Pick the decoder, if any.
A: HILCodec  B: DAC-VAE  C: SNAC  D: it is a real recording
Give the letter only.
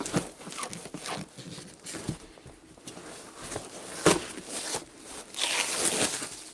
D